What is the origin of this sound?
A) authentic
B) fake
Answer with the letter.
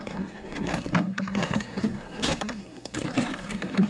B